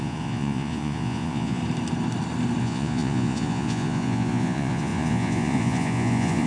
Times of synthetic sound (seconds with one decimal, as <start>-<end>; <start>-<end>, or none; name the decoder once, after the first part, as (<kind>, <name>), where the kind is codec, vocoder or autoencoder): 0.0-1.6 (vocoder, Vocos); 2.6-6.5